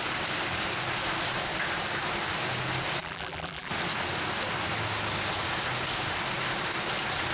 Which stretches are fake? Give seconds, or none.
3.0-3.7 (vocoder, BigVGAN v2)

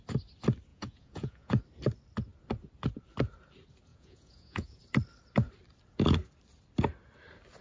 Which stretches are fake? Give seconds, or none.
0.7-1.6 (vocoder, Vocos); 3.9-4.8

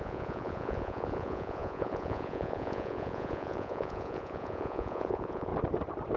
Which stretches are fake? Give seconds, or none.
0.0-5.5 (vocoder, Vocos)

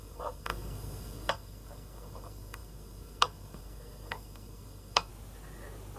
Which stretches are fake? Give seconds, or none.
0.0-5.1 (codec, SNAC)